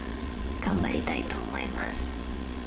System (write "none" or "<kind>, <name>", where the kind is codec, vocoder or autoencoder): vocoder, Vocos